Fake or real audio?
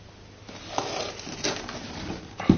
real